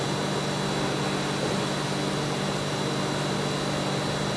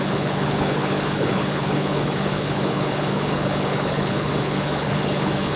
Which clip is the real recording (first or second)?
first